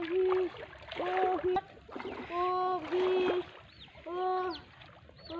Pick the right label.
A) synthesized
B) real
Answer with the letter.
B